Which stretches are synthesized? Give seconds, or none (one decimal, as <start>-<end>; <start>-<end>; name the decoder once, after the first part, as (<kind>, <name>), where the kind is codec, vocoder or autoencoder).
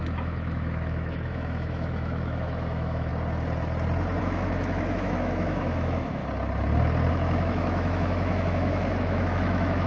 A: 0.0-3.1 (autoencoder, DAC-VAE); 4.2-6.2; 7.1-9.9